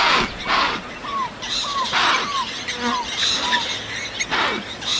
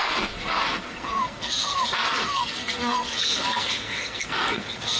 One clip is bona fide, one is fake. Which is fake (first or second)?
second